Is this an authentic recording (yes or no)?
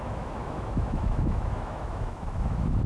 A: no